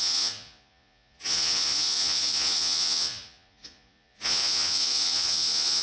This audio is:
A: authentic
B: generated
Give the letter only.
B